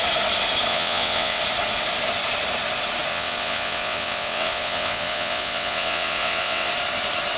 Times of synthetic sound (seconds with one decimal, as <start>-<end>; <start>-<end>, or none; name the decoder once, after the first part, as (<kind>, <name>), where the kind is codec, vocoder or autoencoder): 0.7-1.4 (vocoder, WaveNeXt); 3.1-6.7